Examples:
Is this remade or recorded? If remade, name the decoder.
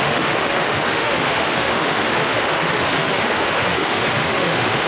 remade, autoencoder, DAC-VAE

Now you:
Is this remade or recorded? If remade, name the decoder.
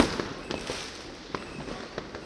recorded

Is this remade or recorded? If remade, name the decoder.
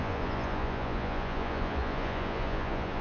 remade, vocoder, Vocos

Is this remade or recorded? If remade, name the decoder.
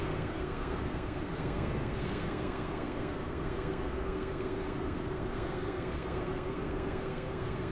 remade, codec, SNAC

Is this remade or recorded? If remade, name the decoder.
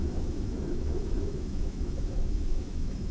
remade, autoencoder, DAC-VAE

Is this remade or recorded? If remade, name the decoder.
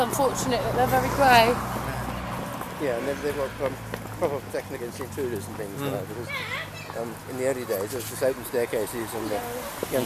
recorded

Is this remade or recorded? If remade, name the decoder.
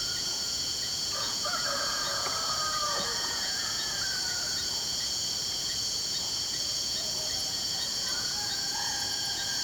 remade, vocoder, Vocos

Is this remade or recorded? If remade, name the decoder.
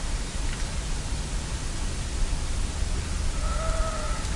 recorded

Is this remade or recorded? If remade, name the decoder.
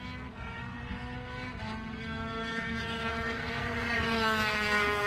remade, codec, SNAC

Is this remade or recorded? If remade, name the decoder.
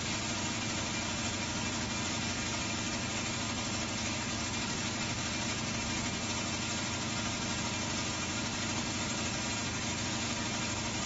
recorded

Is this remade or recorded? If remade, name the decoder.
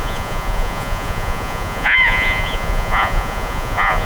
remade, vocoder, Vocos